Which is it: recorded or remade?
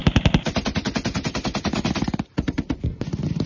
recorded